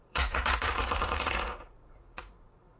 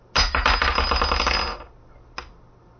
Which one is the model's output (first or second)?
first